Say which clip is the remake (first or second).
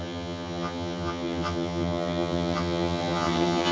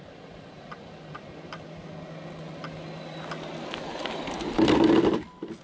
first